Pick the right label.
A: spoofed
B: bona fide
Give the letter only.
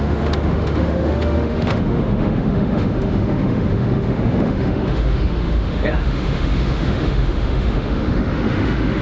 A